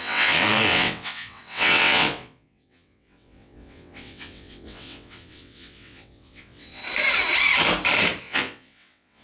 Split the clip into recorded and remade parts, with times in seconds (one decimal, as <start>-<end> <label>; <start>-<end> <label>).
0.0-6.8 remade; 6.8-8.2 recorded; 8.2-9.2 remade